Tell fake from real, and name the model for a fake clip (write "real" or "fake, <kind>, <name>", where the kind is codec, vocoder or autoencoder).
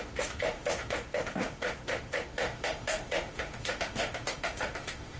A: fake, autoencoder, DAC-VAE